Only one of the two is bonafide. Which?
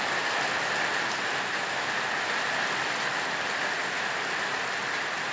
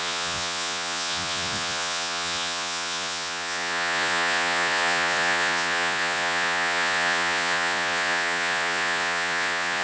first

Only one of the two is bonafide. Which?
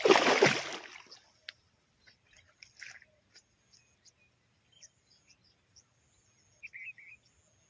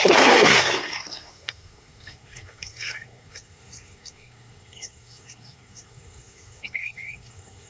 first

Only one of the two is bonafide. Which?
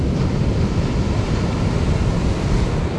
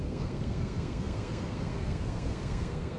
first